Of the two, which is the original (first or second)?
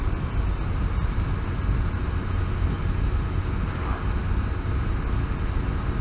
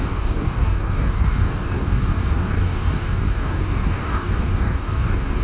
first